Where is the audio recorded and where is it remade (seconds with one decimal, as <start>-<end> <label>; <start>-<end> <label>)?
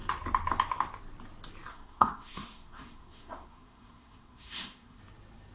0.0-1.7 recorded; 1.7-5.0 remade; 5.0-5.5 recorded